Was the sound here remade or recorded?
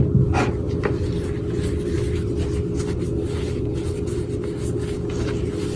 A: recorded